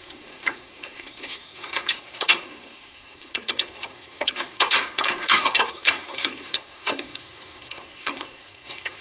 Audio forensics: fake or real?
fake